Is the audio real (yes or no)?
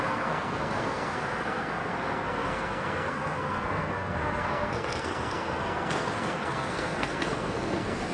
no